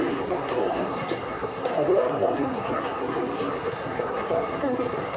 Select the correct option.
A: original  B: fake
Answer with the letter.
B